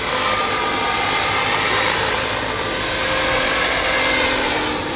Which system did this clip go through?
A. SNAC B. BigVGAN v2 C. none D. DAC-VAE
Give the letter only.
C